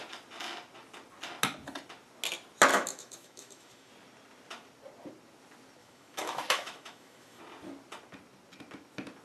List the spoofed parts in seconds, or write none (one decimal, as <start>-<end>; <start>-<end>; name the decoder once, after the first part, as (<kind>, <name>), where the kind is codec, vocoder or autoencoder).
2.7-3.9 (autoencoder, DAC-VAE); 5.8-7.4

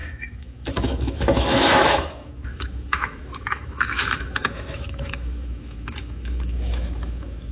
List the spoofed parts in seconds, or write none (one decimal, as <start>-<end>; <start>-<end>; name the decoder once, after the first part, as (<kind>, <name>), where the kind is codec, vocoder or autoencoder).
0.0-7.5 (autoencoder, DAC-VAE)

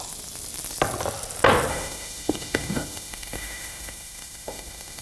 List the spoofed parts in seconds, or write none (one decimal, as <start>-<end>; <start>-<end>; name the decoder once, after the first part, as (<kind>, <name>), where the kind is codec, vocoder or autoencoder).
1.7-5.0 (autoencoder, DAC-VAE)

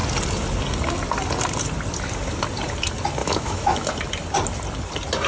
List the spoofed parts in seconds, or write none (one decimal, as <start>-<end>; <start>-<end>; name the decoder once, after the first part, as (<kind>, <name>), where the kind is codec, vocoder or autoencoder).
3.2-3.9 (autoencoder, DAC-VAE)

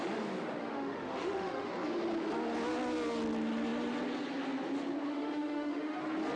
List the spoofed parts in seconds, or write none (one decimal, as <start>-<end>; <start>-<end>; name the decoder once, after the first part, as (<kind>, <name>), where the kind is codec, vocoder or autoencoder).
0.6-1.7 (autoencoder, DAC-VAE); 5.1-6.0

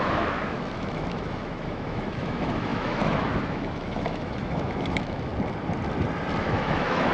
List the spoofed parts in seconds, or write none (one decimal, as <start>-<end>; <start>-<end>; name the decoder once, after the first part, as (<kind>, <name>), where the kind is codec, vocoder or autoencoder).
0.0-5.3 (autoencoder, DAC-VAE); 6.4-7.1

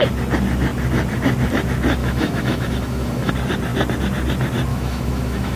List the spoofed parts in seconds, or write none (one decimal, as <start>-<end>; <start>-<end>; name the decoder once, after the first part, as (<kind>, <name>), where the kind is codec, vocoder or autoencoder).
2.0-3.3 (autoencoder, DAC-VAE); 4.7-5.6

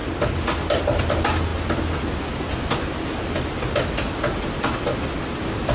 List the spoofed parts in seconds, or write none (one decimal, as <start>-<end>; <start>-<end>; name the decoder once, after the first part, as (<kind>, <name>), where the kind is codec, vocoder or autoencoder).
none